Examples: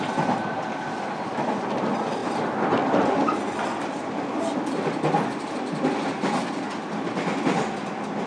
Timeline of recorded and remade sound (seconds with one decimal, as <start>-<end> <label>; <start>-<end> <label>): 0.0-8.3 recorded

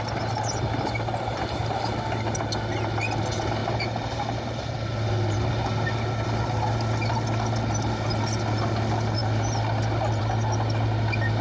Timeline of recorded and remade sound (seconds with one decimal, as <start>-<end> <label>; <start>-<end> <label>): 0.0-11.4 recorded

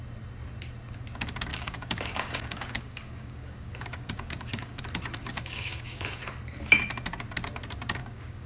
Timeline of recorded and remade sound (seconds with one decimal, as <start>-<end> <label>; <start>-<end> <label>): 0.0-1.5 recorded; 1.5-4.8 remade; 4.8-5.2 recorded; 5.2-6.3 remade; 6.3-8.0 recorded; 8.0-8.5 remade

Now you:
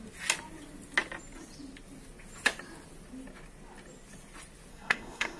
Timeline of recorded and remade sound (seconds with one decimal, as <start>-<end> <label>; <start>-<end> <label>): 0.0-4.7 recorded; 4.7-5.4 remade

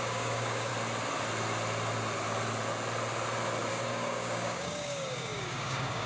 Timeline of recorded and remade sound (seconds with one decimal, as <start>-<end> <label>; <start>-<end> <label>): 0.0-0.7 remade; 0.7-3.7 recorded; 3.7-6.1 remade